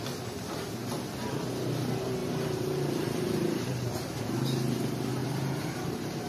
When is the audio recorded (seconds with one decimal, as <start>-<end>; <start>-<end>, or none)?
0.0-2.2; 4.2-5.2